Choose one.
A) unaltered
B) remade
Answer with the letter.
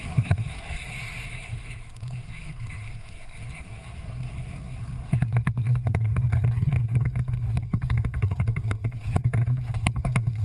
B